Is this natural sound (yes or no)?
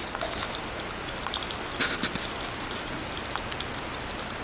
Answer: yes